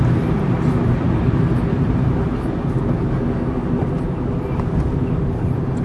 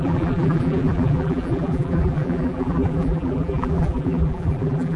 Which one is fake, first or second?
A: second